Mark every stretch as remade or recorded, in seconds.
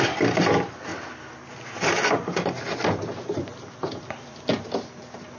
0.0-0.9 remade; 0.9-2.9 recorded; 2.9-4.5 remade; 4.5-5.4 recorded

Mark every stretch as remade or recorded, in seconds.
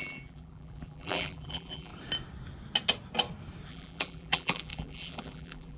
0.0-1.9 remade; 1.9-3.7 recorded; 3.7-5.8 remade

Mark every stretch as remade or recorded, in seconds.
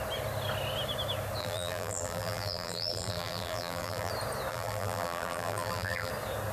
0.0-1.4 recorded; 1.4-4.1 remade; 4.1-4.5 recorded; 4.5-6.1 remade; 6.1-6.5 recorded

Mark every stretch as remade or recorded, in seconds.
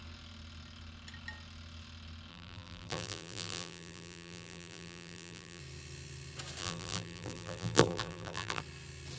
0.0-2.3 recorded; 2.3-5.6 remade; 5.6-6.6 recorded; 6.6-8.6 remade; 8.6-9.2 recorded